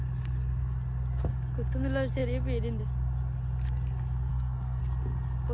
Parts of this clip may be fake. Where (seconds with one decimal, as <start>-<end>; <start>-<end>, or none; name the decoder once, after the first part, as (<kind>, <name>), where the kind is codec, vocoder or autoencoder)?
4.3-4.8 (codec, SNAC)